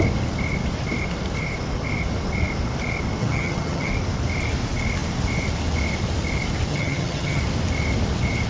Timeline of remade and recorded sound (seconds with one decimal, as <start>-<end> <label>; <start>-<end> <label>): 0.0-3.2 recorded; 3.2-3.9 remade; 3.9-6.7 recorded; 6.7-7.4 remade; 7.4-8.5 recorded